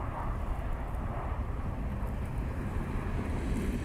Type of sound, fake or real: real